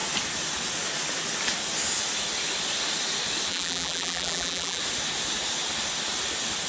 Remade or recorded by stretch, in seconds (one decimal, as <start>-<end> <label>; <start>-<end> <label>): 0.0-3.5 recorded; 3.5-4.8 remade; 4.8-6.7 recorded